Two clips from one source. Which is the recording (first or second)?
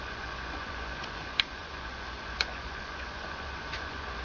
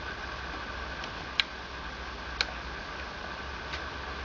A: second